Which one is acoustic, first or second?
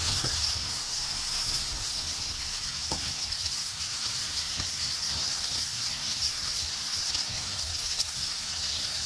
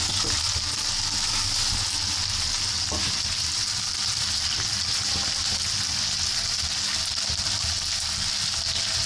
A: second